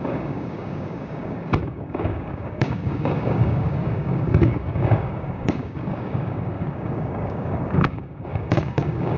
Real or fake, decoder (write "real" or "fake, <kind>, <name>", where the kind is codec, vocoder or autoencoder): fake, codec, DAC